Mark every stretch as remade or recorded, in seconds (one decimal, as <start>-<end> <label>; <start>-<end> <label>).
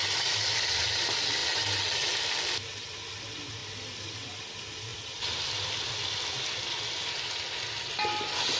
0.0-3.6 recorded; 3.6-4.5 remade; 4.5-4.9 recorded; 4.9-6.0 remade; 6.0-8.6 recorded